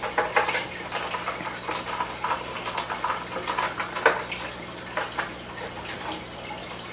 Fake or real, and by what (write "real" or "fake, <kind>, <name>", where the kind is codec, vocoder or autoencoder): real